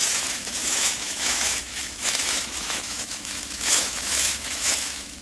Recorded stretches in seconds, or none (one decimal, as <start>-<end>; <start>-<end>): none